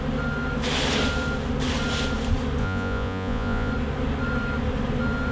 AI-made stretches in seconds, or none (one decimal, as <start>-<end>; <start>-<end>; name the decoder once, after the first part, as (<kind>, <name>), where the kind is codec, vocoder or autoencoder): 2.6-3.7 (vocoder, Vocos)